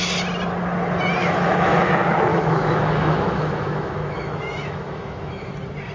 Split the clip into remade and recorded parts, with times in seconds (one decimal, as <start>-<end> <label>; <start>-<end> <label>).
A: 0.0-1.2 recorded; 1.2-1.9 remade; 1.9-2.3 recorded; 2.3-5.5 remade; 5.5-5.9 recorded